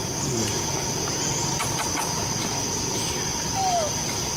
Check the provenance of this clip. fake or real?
real